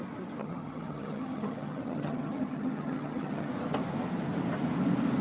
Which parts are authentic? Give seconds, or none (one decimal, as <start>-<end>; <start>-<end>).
0.0-0.4; 3.5-5.2